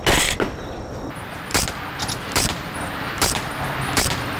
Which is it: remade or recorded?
recorded